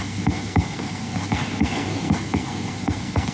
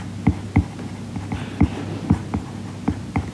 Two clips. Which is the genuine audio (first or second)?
second